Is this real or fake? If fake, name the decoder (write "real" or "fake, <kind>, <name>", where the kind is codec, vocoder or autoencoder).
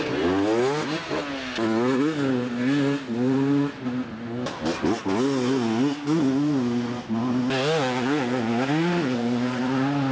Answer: real